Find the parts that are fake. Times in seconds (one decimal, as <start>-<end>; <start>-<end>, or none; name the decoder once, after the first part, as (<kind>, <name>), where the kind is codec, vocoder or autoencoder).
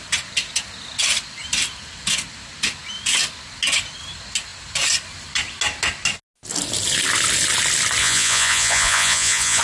8.0-9.6 (vocoder, Vocos)